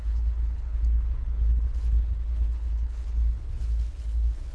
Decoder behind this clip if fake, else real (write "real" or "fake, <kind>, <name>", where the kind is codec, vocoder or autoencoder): fake, codec, HILCodec